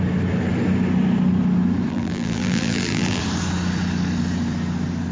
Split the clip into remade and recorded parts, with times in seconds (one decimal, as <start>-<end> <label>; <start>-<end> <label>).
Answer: 0.0-1.9 recorded; 1.9-3.2 remade; 3.2-5.1 recorded